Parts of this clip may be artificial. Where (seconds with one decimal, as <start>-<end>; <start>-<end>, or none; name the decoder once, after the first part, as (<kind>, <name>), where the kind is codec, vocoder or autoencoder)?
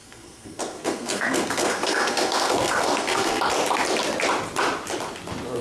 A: 0.0-3.4 (codec, SNAC)